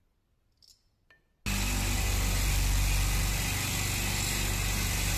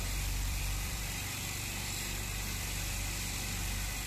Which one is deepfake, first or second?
second